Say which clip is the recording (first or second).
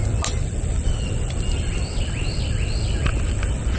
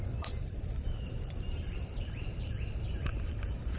first